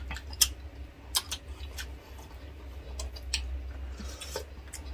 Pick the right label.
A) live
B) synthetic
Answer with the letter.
A